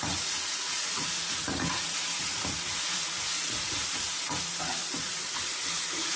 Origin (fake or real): fake